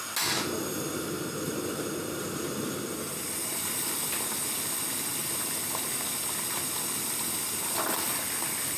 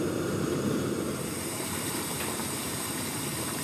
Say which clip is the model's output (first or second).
second